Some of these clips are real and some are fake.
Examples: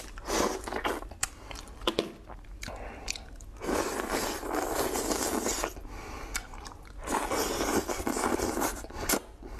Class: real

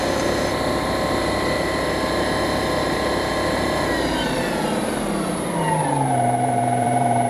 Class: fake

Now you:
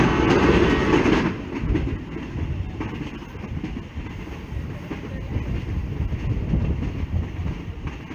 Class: real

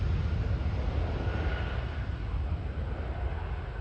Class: real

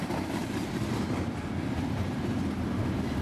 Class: real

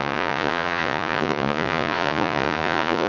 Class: fake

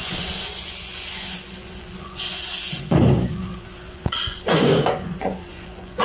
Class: fake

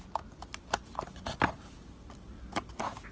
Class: real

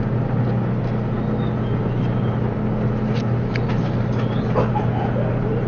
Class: real